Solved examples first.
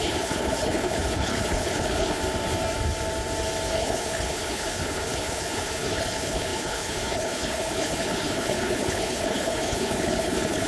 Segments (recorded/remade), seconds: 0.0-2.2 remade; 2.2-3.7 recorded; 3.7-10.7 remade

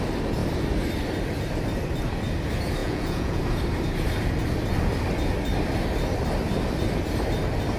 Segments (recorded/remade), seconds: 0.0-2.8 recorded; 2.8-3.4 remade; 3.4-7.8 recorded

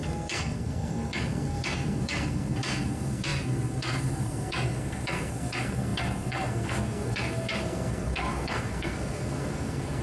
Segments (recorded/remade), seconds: 0.0-10.0 remade

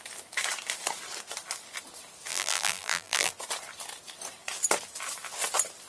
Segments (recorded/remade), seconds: 0.0-2.3 recorded; 2.3-3.3 remade; 3.3-5.9 recorded

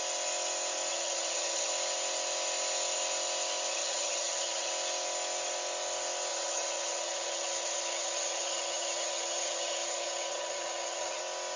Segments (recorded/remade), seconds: 0.0-0.9 recorded; 0.9-1.7 remade; 1.7-3.7 recorded; 3.7-4.7 remade; 4.7-6.3 recorded; 6.3-11.2 remade; 11.2-11.6 recorded

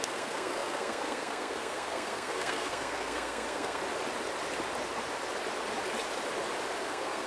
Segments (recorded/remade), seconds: 0.0-3.8 remade; 3.8-6.8 recorded; 6.8-7.3 remade

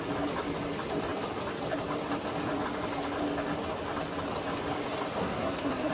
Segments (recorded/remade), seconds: 0.0-5.2 recorded; 5.2-5.9 remade